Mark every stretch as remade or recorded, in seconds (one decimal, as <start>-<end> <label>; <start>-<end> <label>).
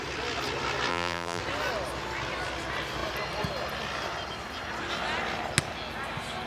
0.0-0.9 recorded; 0.9-1.4 remade; 1.4-6.5 recorded